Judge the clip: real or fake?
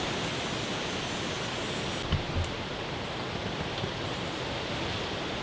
real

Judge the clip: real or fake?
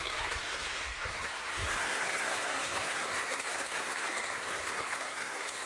fake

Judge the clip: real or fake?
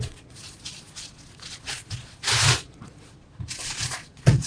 fake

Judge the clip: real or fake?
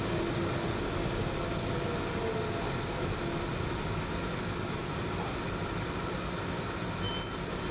real